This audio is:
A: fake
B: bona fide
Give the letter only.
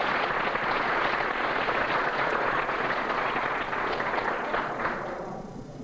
A